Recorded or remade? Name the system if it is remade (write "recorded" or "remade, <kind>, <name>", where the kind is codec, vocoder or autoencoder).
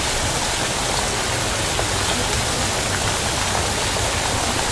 recorded